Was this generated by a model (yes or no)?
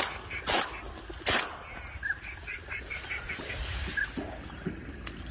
no